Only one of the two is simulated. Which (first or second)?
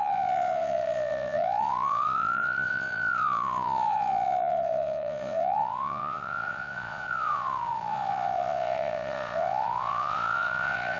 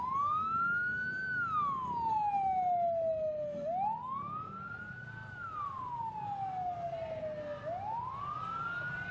first